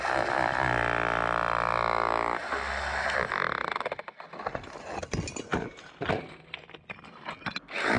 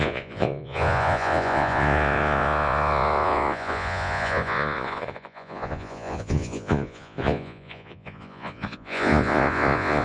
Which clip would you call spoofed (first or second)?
second